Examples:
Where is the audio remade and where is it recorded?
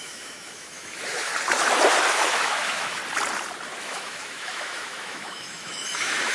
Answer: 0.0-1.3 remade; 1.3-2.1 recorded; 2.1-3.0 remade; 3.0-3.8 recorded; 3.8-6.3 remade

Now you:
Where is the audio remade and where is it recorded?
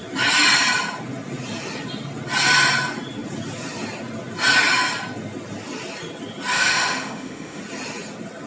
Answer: 0.0-6.5 recorded; 6.5-7.6 remade; 7.6-8.5 recorded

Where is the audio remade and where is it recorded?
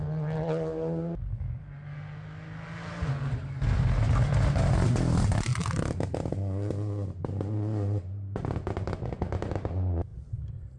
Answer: 0.0-10.8 recorded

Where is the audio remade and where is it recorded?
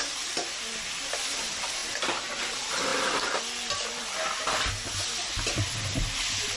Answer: 0.0-6.6 recorded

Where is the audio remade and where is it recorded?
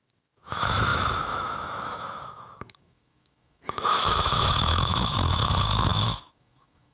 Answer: 0.0-6.9 remade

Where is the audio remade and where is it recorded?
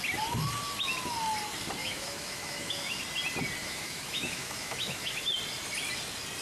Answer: 0.0-1.8 recorded; 1.8-3.0 remade; 3.0-3.6 recorded; 3.6-5.2 remade; 5.2-6.4 recorded